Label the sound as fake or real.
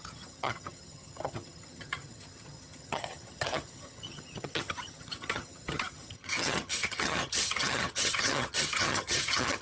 fake